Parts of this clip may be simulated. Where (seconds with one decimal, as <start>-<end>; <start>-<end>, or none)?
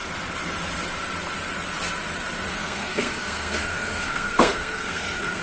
2.5-5.4